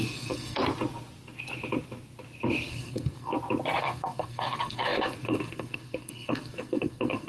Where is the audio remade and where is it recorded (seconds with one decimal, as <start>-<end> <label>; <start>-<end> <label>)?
0.0-0.6 remade; 0.6-2.7 recorded; 2.7-3.3 remade; 3.3-3.8 recorded; 3.8-7.3 remade